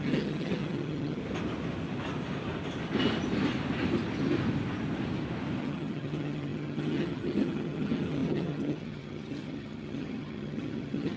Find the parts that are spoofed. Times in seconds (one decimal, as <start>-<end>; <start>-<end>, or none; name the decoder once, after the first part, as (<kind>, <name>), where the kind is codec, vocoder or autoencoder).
0.0-1.2 (vocoder, HiFi-GAN); 5.6-11.2